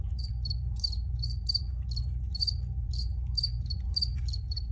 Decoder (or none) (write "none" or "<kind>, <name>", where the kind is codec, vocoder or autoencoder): vocoder, BigVGAN v2